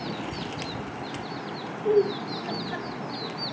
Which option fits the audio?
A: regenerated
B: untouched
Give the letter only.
B